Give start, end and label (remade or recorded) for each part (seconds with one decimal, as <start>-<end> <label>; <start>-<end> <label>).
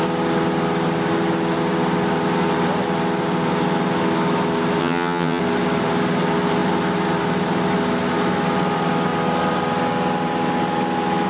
0.0-4.8 recorded; 4.8-5.4 remade; 5.4-11.3 recorded